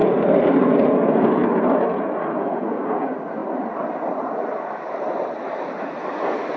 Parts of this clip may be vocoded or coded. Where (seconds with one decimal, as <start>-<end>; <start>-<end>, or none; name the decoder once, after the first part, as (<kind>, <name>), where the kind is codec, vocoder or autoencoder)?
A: 0.0-0.8 (vocoder, BigVGAN v2); 3.4-6.1